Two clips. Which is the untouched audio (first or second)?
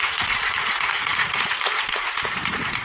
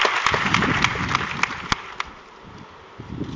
second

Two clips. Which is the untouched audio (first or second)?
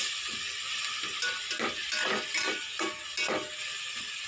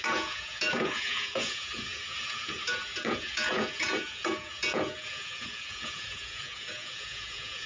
first